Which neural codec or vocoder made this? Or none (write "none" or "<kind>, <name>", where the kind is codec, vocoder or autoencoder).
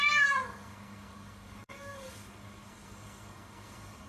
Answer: codec, SNAC